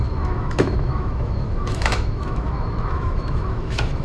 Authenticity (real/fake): fake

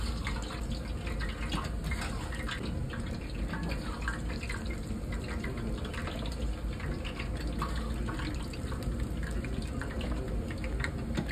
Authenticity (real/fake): real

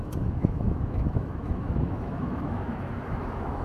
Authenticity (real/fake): fake